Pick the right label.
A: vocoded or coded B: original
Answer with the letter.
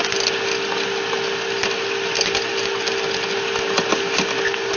B